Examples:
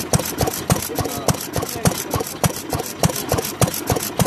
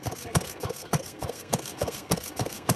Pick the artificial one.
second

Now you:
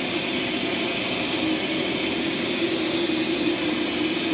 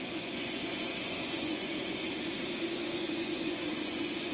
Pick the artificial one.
second